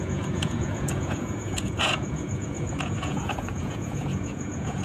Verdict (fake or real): fake